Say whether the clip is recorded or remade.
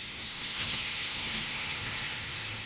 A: remade